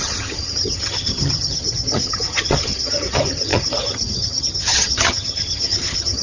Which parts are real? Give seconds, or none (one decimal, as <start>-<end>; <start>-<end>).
none